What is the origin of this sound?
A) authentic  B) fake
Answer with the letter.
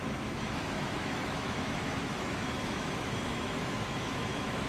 B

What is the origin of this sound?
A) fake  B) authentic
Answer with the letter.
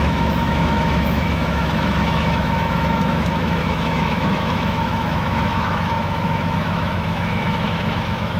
A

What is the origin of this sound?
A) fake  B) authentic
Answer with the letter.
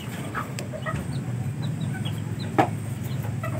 B